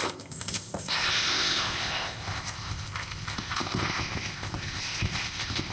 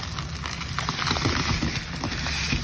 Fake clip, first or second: first